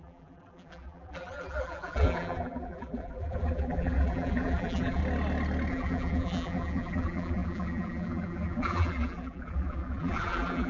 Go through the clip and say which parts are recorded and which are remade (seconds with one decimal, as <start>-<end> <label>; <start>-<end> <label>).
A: 0.0-5.0 remade; 5.0-5.7 recorded; 5.7-10.7 remade